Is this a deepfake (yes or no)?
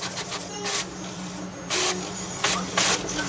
no